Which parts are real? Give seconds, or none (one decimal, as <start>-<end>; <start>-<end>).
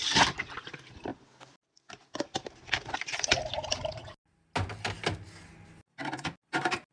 0.0-6.9